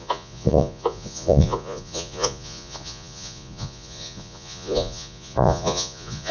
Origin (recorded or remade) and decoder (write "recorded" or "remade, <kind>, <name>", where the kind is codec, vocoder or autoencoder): remade, vocoder, Vocos